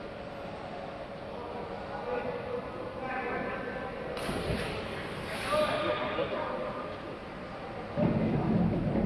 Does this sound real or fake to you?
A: real